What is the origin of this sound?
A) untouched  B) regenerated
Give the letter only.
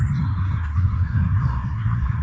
B